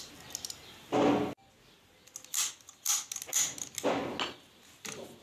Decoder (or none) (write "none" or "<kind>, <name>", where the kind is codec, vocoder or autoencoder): none